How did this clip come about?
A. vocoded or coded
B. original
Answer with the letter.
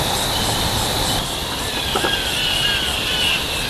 B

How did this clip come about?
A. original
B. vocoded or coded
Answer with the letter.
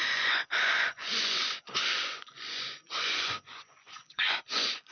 B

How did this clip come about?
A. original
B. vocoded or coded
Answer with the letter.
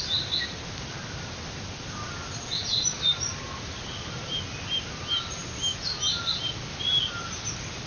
A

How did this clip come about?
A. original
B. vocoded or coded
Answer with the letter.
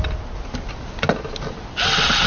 A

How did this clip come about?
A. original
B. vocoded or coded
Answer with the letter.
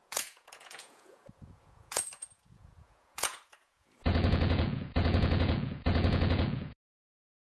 B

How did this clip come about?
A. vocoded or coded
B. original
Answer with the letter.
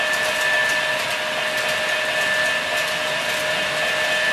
B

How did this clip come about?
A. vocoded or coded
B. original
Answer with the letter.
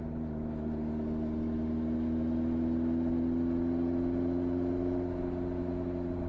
B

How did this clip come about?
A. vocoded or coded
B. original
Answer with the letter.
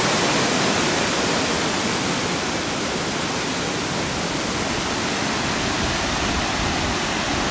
B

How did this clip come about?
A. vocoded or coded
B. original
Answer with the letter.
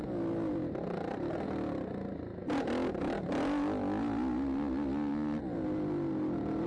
B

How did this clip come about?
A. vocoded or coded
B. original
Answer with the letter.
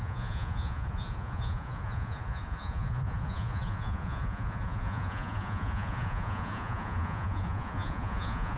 A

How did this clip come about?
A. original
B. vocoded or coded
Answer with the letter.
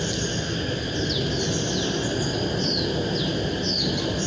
A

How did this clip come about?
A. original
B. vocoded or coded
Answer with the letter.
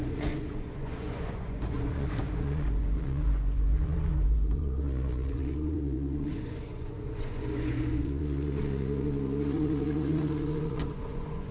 B